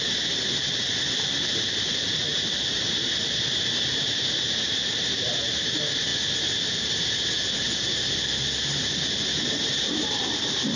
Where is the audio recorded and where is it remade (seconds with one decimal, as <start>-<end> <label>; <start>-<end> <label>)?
0.0-2.3 recorded; 2.3-5.6 remade; 5.6-9.6 recorded; 9.6-10.2 remade; 10.2-10.8 recorded